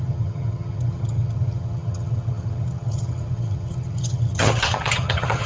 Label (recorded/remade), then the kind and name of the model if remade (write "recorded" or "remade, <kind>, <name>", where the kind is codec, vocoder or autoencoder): remade, vocoder, HiFi-GAN